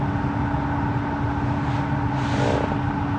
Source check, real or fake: real